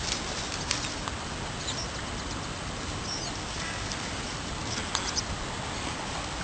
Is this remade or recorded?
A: recorded